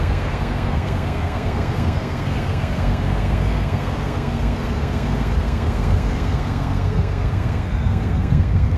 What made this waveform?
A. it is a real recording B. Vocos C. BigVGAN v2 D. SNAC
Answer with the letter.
D